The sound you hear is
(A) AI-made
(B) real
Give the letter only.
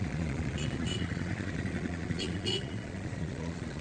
A